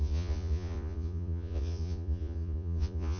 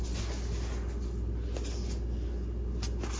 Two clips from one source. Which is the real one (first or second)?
second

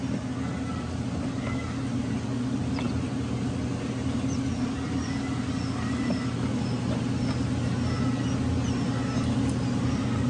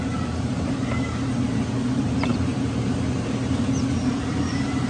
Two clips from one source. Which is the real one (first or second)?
first